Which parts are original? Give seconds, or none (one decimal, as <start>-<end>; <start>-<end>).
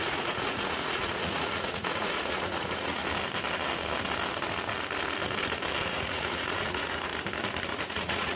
3.0-5.9; 7.1-7.7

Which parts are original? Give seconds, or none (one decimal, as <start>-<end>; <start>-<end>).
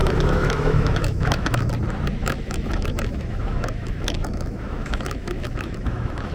1.7-2.2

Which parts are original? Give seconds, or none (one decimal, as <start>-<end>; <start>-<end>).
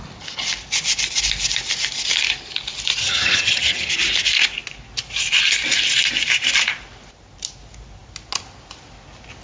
0.0-3.0; 3.9-9.4